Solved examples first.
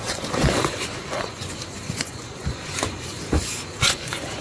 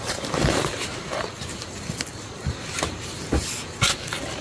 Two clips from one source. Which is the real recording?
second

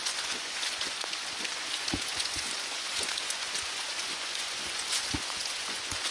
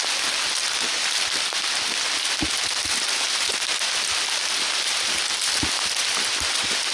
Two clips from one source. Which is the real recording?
second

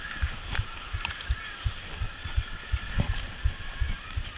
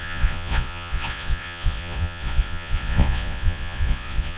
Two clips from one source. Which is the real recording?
first